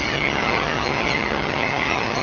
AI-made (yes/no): yes